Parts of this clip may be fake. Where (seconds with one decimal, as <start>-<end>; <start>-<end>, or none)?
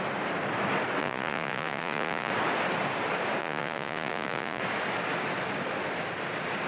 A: 1.0-2.3; 3.4-4.6